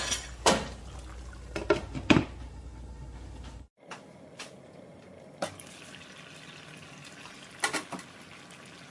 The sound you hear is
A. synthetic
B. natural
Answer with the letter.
B